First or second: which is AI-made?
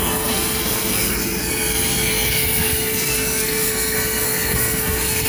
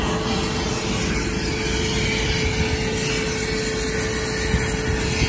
first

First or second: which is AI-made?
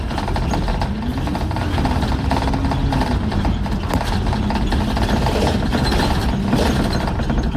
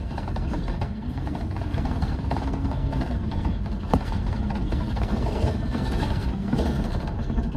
second